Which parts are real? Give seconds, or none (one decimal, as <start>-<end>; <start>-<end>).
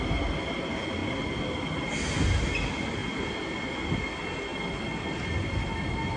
0.0-6.2